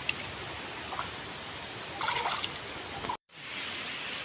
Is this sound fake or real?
real